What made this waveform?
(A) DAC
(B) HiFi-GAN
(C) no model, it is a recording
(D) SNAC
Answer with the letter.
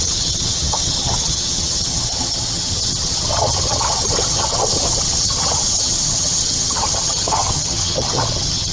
B